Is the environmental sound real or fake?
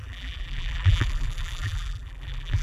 fake